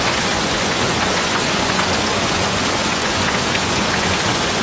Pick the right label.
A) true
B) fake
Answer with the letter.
B